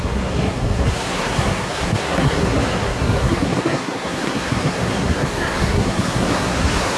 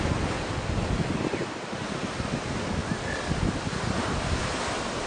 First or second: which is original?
second